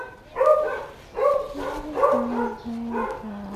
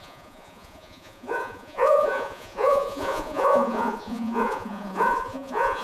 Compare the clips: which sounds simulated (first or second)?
second